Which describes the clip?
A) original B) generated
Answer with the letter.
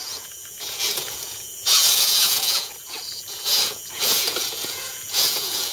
B